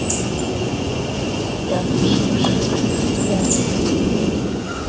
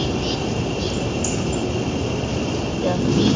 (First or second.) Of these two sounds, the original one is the second